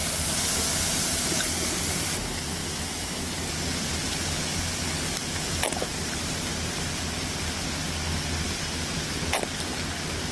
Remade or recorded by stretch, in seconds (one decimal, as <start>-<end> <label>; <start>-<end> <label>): 0.0-2.6 recorded; 2.6-3.3 remade; 3.3-10.3 recorded